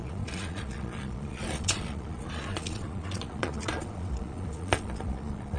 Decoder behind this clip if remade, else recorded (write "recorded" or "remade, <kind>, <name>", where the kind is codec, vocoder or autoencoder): remade, vocoder, Vocos